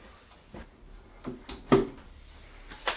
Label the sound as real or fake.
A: real